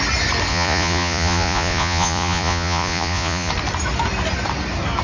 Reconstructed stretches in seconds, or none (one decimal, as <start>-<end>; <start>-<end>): 0.5-3.5